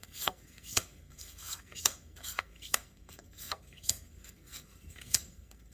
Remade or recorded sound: remade